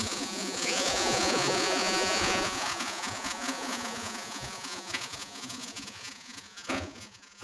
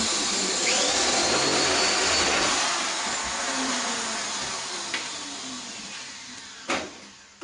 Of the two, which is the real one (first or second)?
second